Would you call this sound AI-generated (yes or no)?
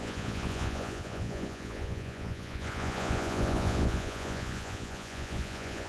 yes